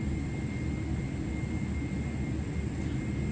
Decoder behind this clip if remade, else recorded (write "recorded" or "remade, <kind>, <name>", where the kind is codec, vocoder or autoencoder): recorded